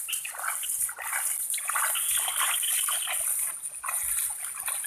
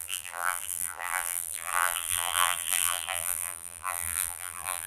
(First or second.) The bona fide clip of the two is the first